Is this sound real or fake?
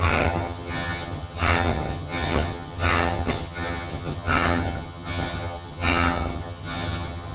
fake